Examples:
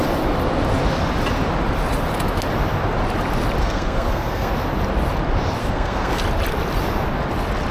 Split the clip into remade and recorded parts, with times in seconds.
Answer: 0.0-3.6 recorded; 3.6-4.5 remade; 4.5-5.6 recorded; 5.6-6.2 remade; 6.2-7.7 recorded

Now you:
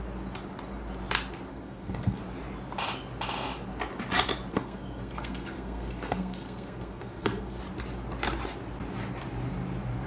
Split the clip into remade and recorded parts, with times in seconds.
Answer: 0.0-1.5 recorded; 1.5-2.2 remade; 2.2-4.5 recorded; 4.5-7.6 remade; 7.6-10.1 recorded

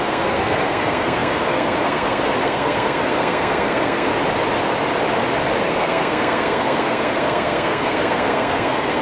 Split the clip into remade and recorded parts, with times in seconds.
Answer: 0.0-4.1 remade; 4.1-5.6 recorded; 5.6-9.0 remade

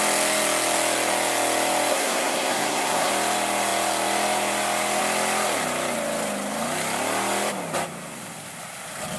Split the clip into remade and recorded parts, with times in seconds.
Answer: 0.0-1.9 recorded; 1.9-3.1 remade; 3.1-9.2 recorded

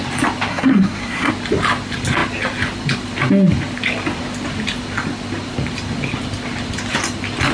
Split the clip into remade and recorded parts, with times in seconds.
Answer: 0.0-0.5 recorded; 0.5-1.3 remade; 1.3-7.5 recorded

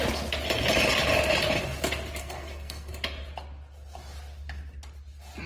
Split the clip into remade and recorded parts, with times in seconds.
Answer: 0.0-2.2 recorded; 2.2-2.9 remade; 2.9-5.5 recorded

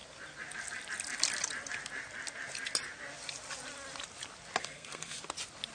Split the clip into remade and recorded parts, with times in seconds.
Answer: 0.0-4.6 recorded; 4.6-5.2 remade; 5.2-5.7 recorded

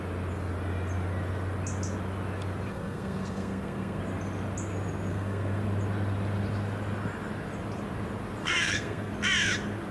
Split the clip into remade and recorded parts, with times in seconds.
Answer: 0.0-2.7 recorded; 2.7-4.0 remade; 4.0-5.1 recorded; 5.1-5.6 remade; 5.6-8.4 recorded; 8.4-9.1 remade; 9.1-9.9 recorded